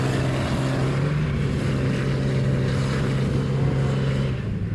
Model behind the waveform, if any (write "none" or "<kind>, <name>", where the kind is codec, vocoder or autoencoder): none